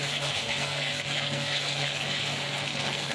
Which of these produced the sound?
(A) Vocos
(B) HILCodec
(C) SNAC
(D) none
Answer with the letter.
C